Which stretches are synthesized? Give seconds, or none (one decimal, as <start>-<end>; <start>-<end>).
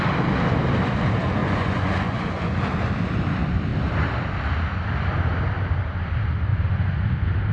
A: 1.4-2.5; 6.5-7.0